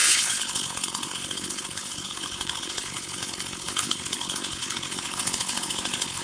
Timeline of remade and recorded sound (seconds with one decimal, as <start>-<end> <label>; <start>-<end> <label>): 0.0-6.2 remade